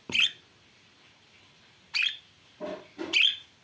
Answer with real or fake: real